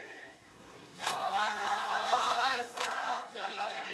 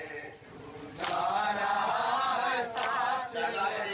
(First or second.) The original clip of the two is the second